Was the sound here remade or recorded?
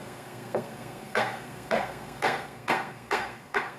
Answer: remade